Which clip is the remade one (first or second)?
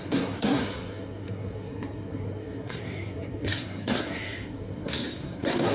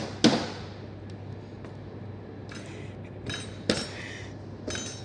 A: first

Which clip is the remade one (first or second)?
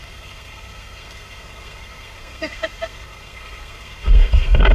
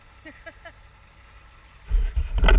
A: first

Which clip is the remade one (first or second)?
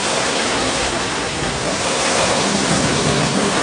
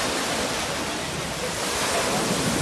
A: first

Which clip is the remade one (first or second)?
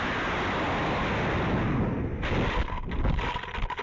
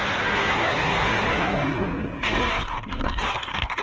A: second